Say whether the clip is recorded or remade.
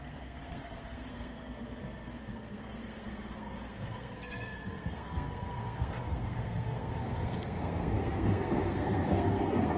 remade